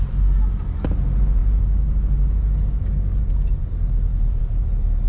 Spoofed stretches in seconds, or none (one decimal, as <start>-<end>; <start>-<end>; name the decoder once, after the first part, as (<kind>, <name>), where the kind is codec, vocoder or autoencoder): 4.1-5.1 (vocoder, BigVGAN v2)